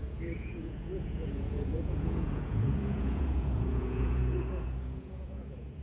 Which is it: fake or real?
fake